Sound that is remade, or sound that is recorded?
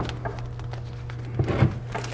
recorded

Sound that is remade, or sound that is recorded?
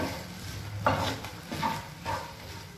recorded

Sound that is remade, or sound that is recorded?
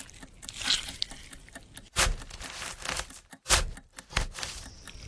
recorded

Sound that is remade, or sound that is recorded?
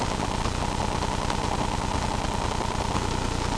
recorded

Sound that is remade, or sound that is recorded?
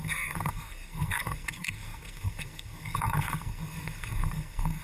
remade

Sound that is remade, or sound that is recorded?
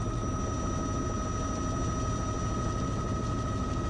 recorded